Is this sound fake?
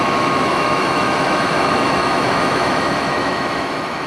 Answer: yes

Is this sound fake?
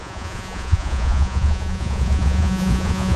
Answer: yes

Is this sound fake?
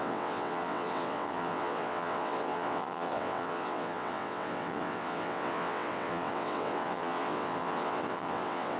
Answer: yes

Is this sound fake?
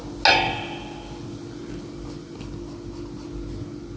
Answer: no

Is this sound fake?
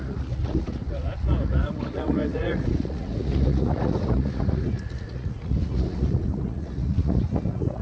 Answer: yes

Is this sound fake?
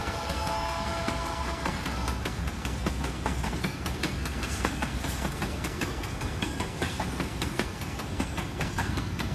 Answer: yes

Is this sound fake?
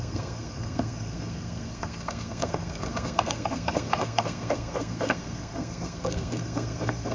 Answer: yes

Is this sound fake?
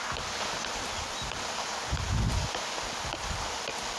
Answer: no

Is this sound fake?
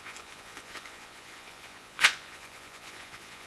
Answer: yes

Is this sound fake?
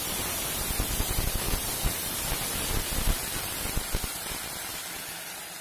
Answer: no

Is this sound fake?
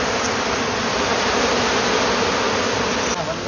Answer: no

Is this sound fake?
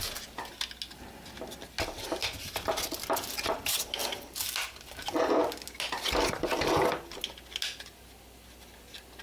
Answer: no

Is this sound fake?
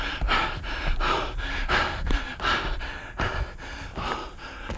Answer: no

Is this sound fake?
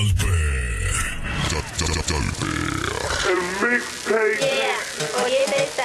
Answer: no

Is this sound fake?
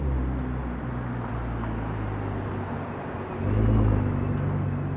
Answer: no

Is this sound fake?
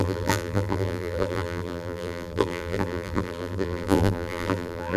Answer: yes